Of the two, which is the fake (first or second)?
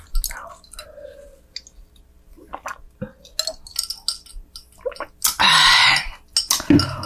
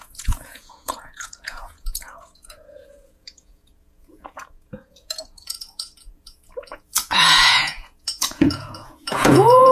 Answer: second